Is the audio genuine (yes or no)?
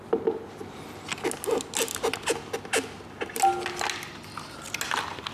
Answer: yes